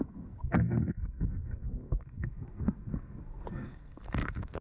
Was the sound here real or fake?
fake